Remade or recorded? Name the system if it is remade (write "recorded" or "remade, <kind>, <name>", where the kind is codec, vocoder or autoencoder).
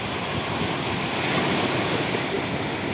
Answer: recorded